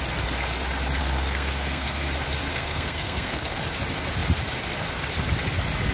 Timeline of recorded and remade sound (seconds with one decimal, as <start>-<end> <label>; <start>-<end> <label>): 0.0-1.0 recorded; 1.0-2.1 remade; 2.1-2.5 recorded; 2.5-3.6 remade; 3.6-5.9 recorded